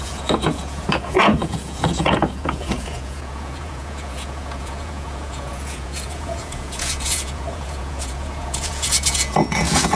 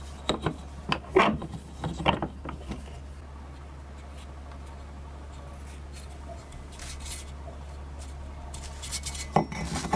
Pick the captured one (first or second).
second